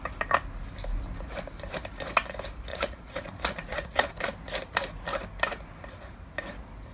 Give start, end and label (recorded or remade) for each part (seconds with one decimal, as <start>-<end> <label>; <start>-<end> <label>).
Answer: 0.0-2.7 recorded; 2.7-4.1 remade; 4.1-6.9 recorded